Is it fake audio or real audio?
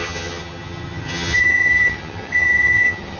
fake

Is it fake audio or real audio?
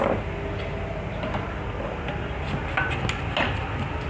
real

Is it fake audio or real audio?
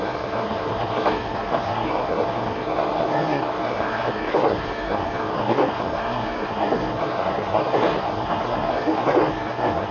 fake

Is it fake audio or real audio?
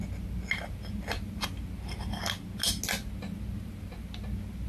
real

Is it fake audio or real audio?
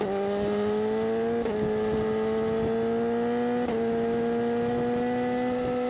real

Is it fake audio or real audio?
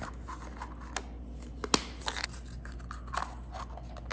real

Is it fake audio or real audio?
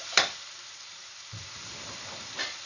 fake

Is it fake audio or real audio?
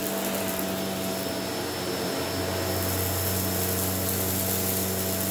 real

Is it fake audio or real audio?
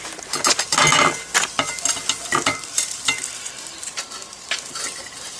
real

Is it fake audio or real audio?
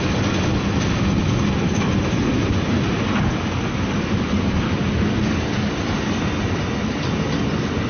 real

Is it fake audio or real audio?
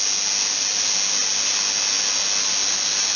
real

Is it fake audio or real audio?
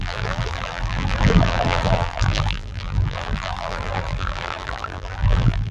fake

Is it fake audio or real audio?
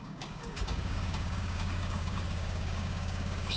fake